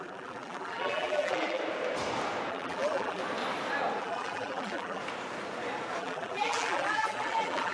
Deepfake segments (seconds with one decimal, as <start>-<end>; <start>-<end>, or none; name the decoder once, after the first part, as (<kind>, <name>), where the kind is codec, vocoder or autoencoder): 0.0-1.6 (vocoder, BigVGAN v2); 2.5-3.2; 4.0-5.0; 6.0-7.7